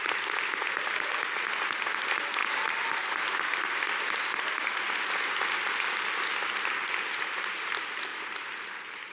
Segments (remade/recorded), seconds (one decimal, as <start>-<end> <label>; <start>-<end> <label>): 0.0-9.1 recorded